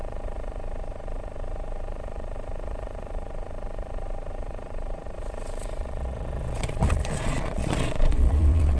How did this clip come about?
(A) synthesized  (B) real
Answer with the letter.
A